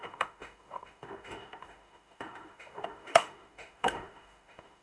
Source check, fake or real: fake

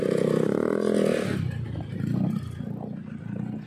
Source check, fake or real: real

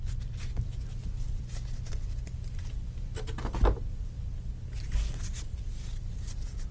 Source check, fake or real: real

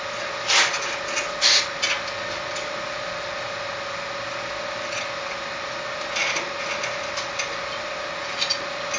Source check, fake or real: real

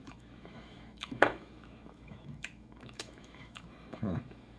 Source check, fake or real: fake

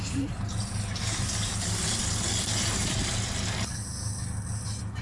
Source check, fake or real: real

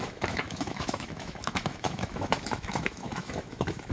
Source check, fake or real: fake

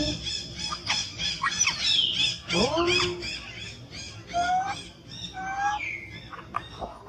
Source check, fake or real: real